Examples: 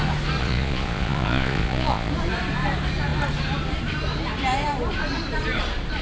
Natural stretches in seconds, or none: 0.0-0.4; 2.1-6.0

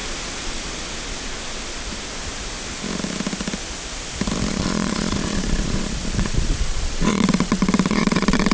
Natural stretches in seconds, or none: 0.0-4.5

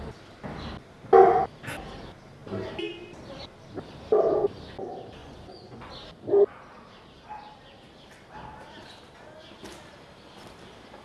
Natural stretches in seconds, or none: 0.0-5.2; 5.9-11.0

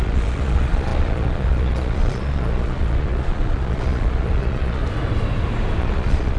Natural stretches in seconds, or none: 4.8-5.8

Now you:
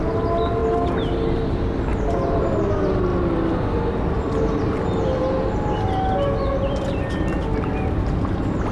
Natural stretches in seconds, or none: 0.0-8.7

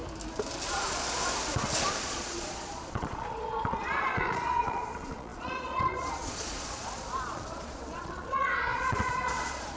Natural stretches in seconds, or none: 0.0-0.7; 1.2-1.9

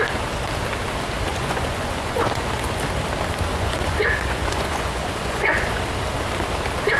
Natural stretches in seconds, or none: 0.0-1.3; 2.6-3.5; 5.8-7.0